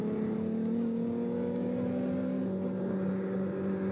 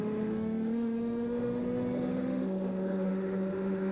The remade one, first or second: second